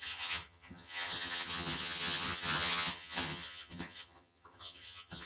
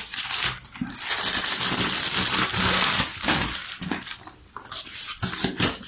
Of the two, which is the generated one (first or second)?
first